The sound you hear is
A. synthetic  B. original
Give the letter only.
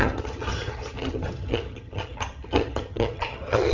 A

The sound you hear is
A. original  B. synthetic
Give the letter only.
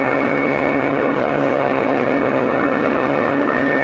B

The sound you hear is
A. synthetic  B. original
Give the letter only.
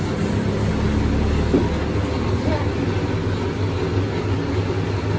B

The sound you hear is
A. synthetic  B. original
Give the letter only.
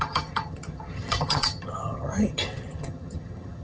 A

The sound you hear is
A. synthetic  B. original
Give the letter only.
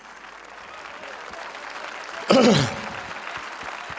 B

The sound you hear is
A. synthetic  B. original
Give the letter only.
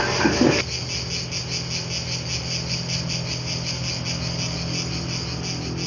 B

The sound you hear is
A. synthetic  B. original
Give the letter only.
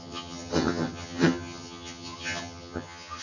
A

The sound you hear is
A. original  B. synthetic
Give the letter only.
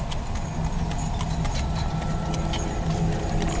A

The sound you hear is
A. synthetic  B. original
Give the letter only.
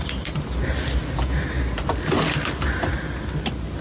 B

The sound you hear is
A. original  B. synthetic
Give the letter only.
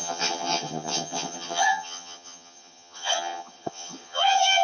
B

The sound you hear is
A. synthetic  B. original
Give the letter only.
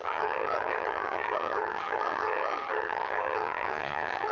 A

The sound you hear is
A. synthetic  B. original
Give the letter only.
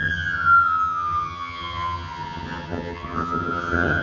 A